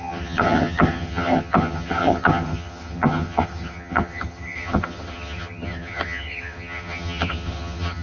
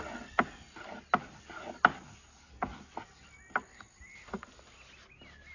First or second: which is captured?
second